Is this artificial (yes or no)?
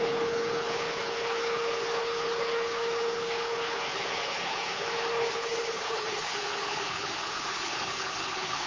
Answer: yes